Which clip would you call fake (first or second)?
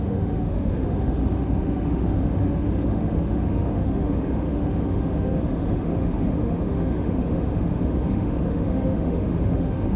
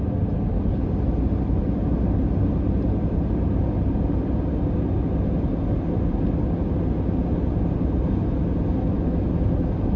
first